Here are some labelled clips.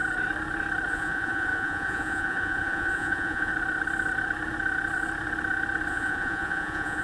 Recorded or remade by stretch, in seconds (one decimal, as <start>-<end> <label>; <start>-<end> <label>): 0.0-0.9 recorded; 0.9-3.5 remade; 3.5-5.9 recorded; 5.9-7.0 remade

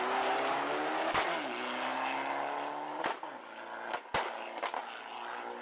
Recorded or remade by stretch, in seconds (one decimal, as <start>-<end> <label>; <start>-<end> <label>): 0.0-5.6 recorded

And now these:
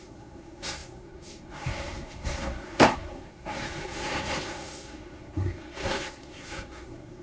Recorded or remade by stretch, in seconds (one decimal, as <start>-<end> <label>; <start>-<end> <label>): 0.0-7.2 remade

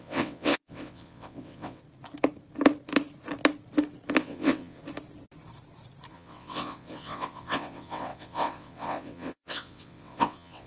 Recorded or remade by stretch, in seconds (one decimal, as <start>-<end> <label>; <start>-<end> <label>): 0.0-1.8 remade; 1.8-4.2 recorded; 4.2-4.8 remade; 4.8-6.1 recorded; 6.1-10.7 remade

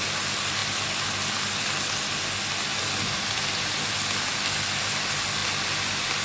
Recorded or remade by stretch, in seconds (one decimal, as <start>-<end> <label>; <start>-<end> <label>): 0.0-6.2 recorded

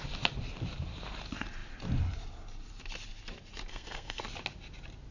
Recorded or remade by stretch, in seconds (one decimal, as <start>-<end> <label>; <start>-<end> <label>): 0.0-3.7 recorded; 3.7-4.2 remade; 4.2-5.1 recorded

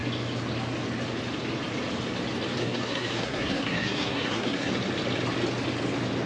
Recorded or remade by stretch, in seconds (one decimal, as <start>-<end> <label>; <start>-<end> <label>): 0.0-2.6 recorded; 2.6-4.7 remade; 4.7-6.3 recorded

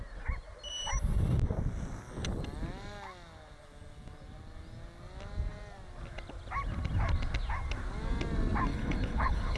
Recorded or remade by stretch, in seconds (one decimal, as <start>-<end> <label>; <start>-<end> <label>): 0.0-8.7 recorded; 8.7-9.6 remade